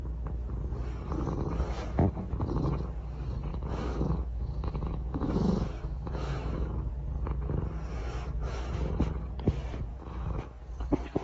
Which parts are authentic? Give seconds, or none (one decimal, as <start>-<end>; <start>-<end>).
0.0-3.5; 6.9-8.0; 8.7-9.9; 10.6-11.2

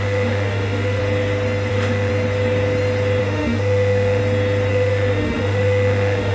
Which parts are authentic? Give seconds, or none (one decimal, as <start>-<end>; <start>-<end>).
1.0-1.7; 2.1-3.2; 4.2-4.7

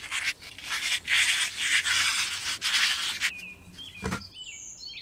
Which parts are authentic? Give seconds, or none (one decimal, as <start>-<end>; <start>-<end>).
0.0-5.0

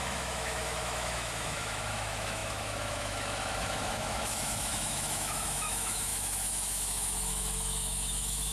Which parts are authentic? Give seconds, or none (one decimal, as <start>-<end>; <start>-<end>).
none

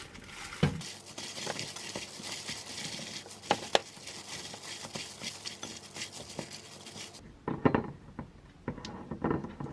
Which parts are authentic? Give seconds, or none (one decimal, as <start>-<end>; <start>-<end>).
0.0-9.7